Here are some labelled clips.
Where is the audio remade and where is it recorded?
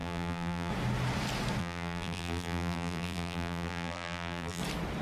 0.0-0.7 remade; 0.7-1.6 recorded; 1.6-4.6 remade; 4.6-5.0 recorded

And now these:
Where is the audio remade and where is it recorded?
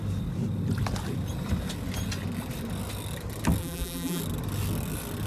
0.0-3.6 recorded; 3.6-4.2 remade; 4.2-5.3 recorded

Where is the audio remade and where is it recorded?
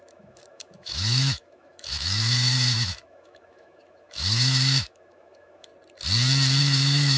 0.0-5.7 remade; 5.7-6.6 recorded; 6.6-7.2 remade